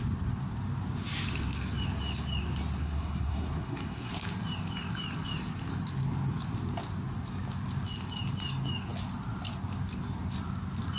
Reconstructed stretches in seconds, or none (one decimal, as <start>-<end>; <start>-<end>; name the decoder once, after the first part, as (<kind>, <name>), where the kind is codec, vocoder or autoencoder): 2.8-4.1 (codec, SNAC)